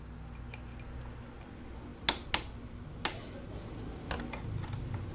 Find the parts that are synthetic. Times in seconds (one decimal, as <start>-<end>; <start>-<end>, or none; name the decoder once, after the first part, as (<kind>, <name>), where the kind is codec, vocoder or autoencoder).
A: none